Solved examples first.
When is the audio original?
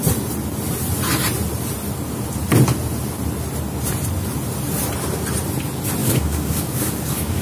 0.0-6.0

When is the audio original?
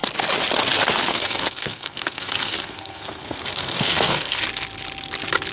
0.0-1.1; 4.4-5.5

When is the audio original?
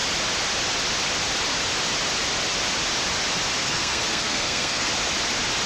0.0-3.6; 4.9-5.7